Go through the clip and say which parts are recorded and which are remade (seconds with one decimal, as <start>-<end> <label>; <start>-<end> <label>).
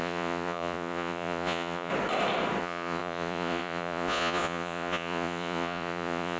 0.0-1.9 remade; 1.9-2.6 recorded; 2.6-6.4 remade